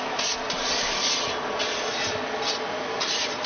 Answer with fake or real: real